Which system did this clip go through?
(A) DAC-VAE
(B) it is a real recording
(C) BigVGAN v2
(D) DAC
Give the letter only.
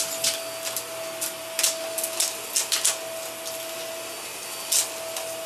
B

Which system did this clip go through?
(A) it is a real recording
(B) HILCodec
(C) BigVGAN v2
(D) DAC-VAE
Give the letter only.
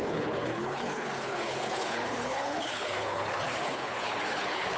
B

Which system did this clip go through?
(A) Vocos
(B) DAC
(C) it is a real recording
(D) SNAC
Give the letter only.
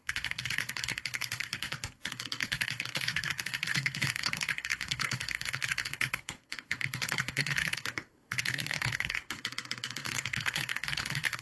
D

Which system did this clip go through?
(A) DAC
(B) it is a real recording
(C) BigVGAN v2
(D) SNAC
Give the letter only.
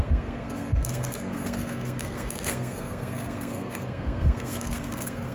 D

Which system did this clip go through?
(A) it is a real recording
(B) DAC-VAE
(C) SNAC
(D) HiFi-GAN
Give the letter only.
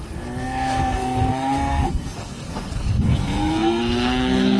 C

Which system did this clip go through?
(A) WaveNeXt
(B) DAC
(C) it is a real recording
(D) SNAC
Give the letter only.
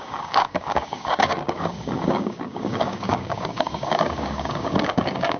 B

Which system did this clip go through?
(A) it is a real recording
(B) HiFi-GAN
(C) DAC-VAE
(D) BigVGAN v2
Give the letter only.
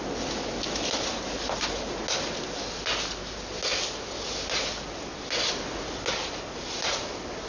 A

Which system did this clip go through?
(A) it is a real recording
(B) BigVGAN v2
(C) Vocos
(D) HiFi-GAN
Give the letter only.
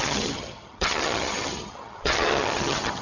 D